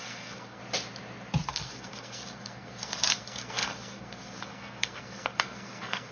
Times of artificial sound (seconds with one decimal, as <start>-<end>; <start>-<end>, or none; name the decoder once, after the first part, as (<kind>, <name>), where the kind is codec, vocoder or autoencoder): 0.0-0.6 (codec, SNAC); 1.5-6.1